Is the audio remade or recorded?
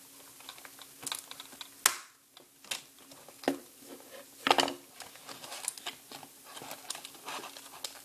recorded